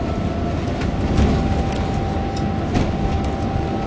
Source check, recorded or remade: recorded